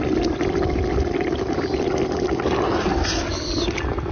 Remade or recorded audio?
recorded